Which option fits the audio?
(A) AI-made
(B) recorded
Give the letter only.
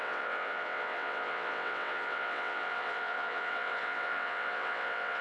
A